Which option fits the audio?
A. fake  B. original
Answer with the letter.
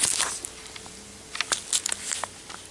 B